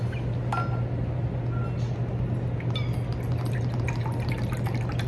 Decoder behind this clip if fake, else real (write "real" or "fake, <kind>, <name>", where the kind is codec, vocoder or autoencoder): real